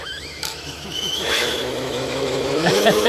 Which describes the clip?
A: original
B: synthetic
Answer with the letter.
B